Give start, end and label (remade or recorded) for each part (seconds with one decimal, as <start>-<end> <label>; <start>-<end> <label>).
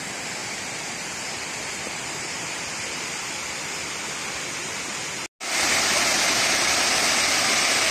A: 0.0-0.4 recorded; 0.4-3.6 remade; 3.6-7.9 recorded